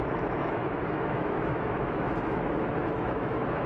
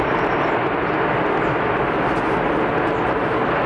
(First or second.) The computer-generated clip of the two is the first